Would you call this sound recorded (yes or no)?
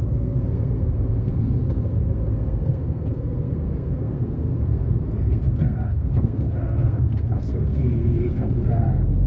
no